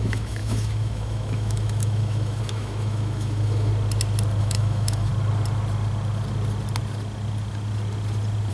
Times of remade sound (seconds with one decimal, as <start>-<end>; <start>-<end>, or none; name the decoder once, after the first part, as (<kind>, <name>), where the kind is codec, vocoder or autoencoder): 0.0-3.7 (autoencoder, DAC-VAE); 4.4-5.1